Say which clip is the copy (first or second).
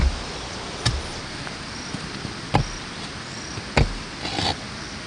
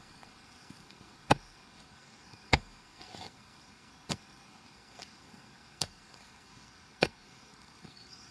second